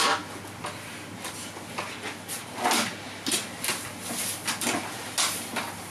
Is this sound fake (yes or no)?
no